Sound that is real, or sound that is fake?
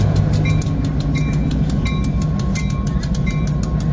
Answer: real